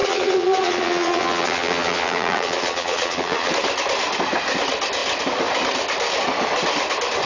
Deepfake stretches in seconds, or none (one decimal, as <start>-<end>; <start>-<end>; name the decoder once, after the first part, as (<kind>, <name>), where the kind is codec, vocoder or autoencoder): 0.0-3.5 (vocoder, Vocos)